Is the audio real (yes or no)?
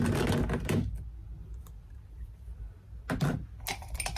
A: yes